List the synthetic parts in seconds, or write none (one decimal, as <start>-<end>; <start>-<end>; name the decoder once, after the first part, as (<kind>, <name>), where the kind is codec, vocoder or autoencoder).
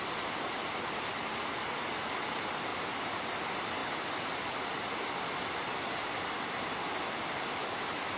none